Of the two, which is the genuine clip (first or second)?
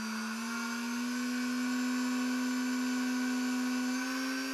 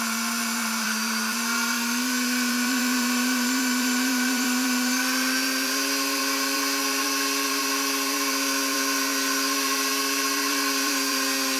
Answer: first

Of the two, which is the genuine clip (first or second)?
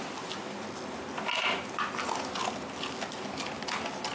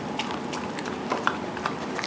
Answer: first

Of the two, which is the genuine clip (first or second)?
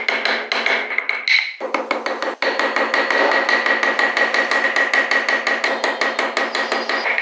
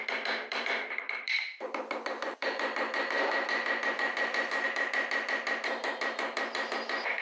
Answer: first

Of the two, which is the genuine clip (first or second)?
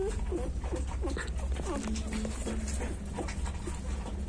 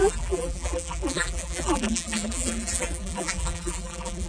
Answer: first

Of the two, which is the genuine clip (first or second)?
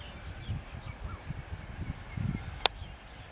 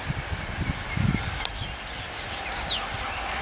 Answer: first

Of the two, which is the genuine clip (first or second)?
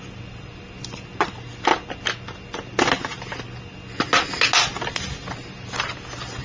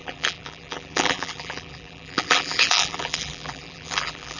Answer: first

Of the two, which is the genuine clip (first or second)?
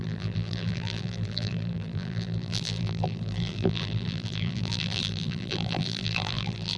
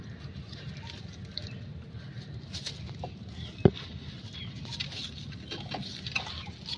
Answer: second